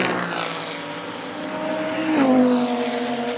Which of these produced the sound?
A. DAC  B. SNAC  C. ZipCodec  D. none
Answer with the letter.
D